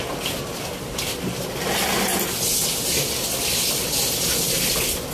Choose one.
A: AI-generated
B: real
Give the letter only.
B